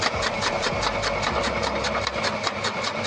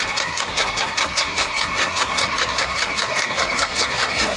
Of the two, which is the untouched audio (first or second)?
first